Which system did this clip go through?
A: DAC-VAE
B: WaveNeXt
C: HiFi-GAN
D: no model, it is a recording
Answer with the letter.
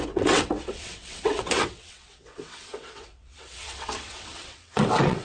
B